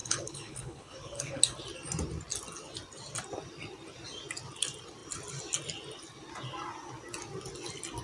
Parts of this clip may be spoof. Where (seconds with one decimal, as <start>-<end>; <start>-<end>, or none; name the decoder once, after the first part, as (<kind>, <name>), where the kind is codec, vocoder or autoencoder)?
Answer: 0.0-1.4 (codec, HILCodec)